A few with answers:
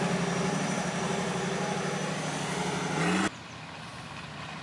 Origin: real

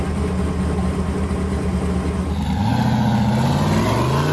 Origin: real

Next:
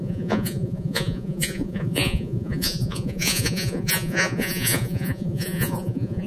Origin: fake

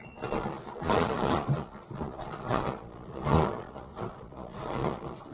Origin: fake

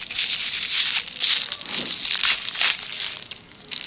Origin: real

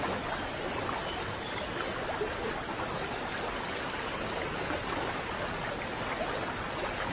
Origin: real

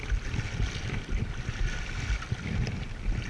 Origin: real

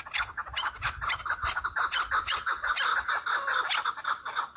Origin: real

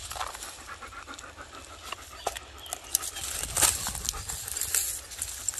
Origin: real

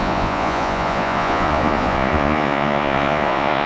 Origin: fake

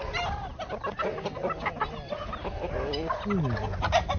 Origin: real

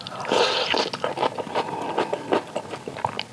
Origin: real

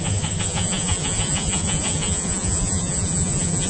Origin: fake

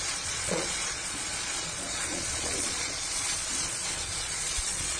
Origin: fake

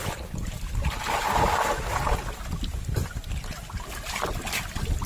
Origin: real